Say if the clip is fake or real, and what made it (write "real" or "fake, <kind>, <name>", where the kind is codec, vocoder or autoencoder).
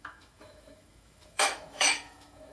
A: fake, autoencoder, DAC-VAE